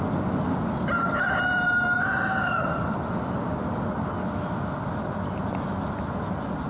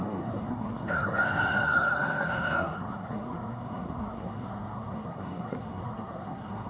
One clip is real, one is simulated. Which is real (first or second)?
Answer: first